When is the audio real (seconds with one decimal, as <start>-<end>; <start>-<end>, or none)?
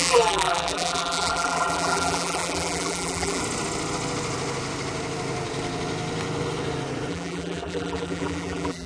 3.4-7.1